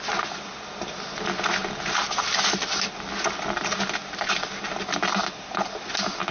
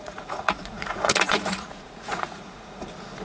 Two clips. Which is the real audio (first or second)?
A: first